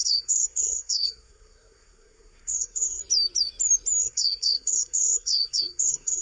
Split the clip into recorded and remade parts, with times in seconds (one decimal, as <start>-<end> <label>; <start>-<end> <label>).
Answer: 0.0-3.0 remade; 3.0-4.0 recorded; 4.0-6.2 remade